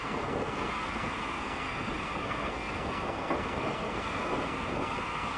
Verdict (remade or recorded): remade